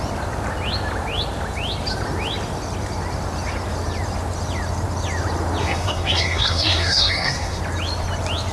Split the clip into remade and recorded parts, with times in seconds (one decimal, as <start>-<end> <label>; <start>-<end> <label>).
0.0-5.6 recorded; 5.6-7.6 remade; 7.6-8.5 recorded